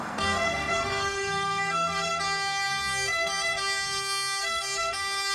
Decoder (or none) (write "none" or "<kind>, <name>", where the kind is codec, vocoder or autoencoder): codec, SNAC